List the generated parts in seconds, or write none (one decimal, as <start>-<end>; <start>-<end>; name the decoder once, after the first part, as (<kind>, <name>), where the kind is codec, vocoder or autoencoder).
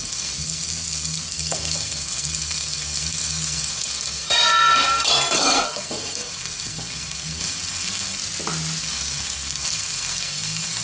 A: 0.0-8.2 (codec, SNAC); 8.8-10.8